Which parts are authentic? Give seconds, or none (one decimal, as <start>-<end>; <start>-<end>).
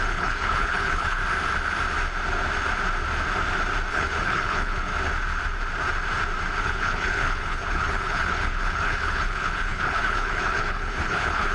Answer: 1.2-3.9; 4.9-6.6